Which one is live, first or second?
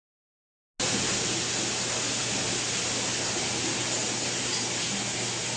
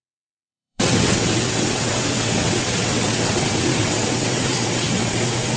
first